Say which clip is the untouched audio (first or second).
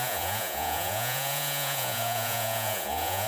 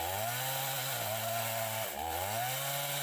second